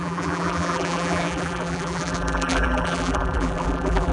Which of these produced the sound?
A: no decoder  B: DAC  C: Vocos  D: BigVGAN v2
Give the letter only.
D